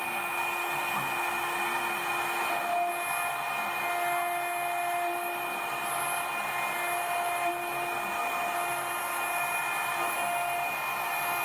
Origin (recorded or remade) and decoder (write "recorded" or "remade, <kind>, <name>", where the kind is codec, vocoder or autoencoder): recorded